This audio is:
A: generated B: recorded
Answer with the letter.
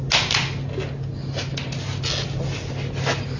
B